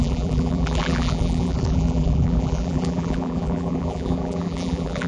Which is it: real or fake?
fake